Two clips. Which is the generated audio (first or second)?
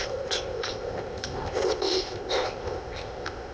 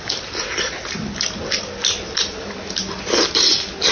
first